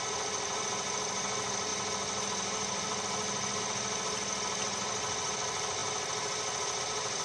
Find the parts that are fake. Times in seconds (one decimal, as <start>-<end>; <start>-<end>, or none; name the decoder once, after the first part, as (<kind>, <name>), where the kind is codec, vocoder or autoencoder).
none